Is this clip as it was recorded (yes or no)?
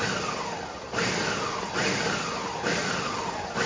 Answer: yes